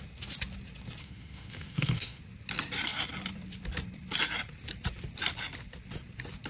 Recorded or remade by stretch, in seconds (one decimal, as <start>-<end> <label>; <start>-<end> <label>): 0.0-1.0 recorded; 1.0-2.2 remade; 2.2-6.5 recorded